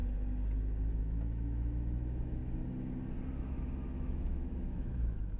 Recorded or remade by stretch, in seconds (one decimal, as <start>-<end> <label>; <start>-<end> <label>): 0.0-1.0 recorded; 1.0-2.4 remade; 2.4-3.4 recorded; 3.4-5.4 remade